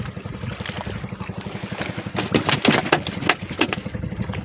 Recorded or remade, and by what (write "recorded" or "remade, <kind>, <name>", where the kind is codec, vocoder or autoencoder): recorded